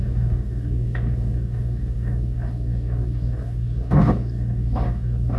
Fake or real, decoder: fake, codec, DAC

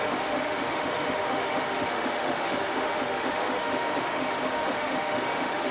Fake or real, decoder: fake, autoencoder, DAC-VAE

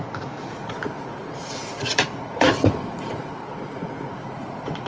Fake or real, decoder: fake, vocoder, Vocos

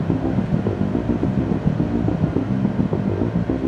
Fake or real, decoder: real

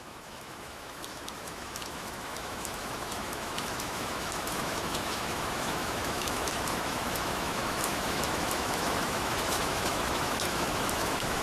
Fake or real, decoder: fake, autoencoder, DAC-VAE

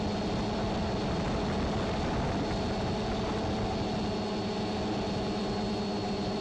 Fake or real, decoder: real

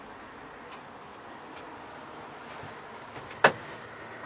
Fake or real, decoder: real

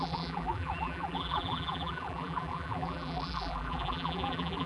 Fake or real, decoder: fake, vocoder, BigVGAN v2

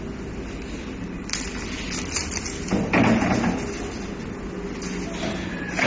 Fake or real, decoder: real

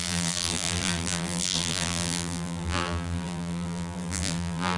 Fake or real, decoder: fake, vocoder, BigVGAN v2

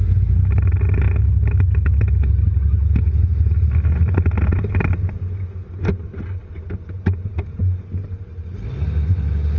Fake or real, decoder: real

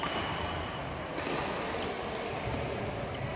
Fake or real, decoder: real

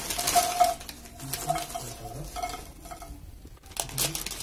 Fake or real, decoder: real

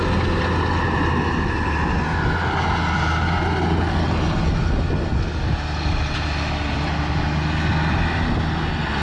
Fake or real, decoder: real